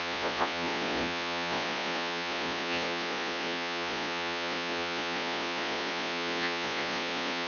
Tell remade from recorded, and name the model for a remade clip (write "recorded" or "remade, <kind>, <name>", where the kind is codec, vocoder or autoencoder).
remade, vocoder, Vocos